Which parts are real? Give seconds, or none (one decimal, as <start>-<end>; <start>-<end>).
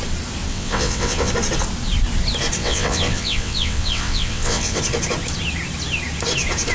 0.0-0.5; 1.3-2.6; 4.8-6.7